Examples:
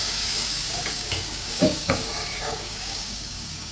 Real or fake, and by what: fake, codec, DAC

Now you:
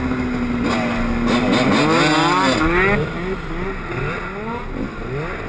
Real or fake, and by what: real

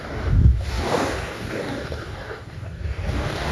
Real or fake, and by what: fake, codec, DAC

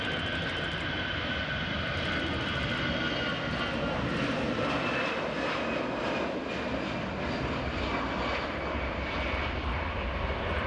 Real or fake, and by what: real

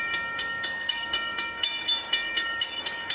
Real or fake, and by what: fake, codec, DAC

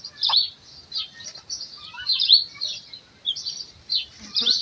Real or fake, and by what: real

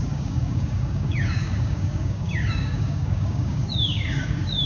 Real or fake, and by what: fake, codec, DAC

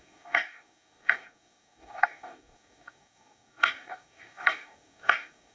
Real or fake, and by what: fake, codec, DAC